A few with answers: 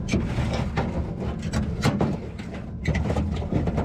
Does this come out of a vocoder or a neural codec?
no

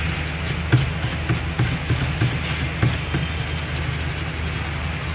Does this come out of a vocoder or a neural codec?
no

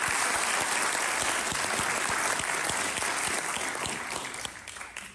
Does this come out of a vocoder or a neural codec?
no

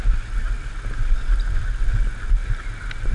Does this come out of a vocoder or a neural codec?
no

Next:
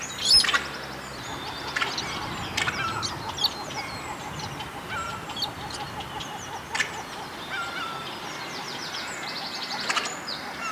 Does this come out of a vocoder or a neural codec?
no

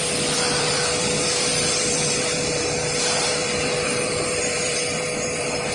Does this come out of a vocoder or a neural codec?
yes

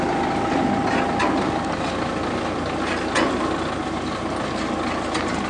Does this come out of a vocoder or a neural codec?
no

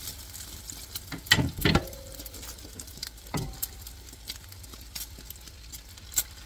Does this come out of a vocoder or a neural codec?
no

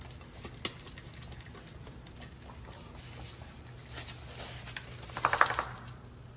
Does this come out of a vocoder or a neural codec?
no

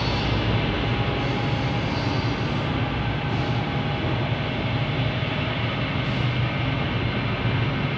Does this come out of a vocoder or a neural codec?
no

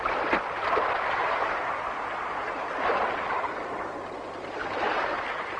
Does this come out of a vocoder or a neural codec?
no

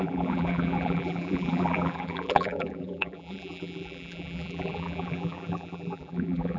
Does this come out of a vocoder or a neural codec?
yes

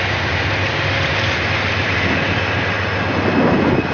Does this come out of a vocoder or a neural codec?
no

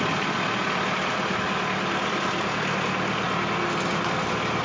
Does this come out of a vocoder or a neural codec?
no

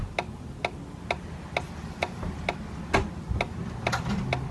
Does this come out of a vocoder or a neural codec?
no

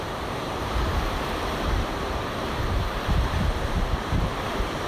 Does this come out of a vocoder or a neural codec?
yes